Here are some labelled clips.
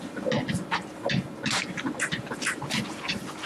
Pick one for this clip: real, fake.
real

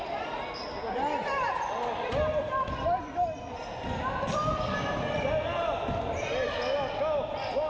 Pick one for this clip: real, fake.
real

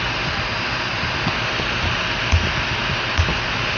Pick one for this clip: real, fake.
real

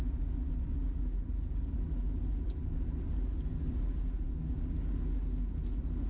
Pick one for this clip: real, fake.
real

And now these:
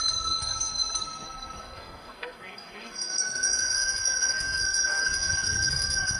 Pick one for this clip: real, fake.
fake